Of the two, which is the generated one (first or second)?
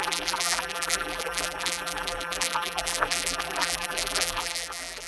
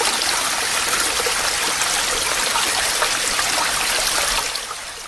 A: first